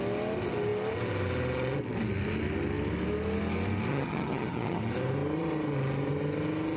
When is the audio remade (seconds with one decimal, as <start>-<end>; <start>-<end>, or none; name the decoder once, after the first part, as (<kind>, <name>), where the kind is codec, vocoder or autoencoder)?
3.9-4.8 (vocoder, HiFi-GAN)